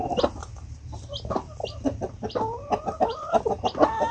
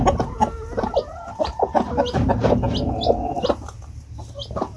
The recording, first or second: second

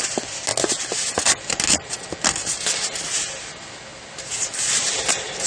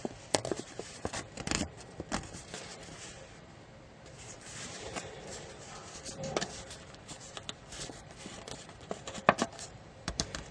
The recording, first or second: first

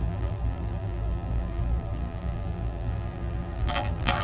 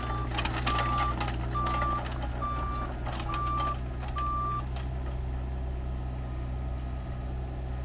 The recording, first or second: second